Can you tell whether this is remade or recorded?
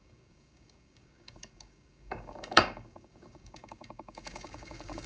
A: remade